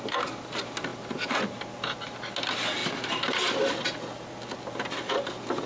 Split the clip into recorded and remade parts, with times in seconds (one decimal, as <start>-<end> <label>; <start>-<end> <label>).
0.0-5.7 recorded